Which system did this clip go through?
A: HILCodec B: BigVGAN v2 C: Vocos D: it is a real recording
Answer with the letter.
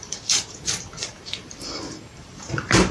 B